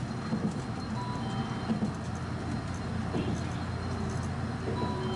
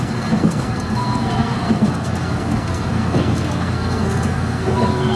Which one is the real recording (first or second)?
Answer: first